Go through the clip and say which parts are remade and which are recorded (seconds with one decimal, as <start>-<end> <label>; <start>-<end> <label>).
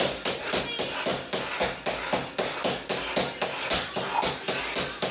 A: 0.0-5.1 recorded